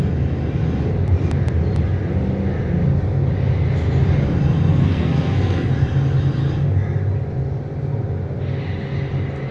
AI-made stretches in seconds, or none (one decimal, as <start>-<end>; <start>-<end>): 4.7-5.7